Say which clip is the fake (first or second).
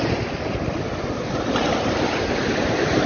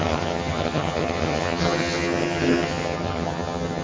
second